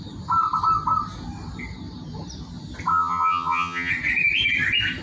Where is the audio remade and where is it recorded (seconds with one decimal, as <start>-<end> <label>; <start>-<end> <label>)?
0.0-2.9 recorded; 2.9-3.9 remade; 3.9-5.0 recorded